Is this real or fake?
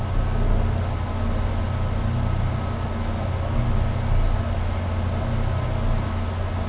real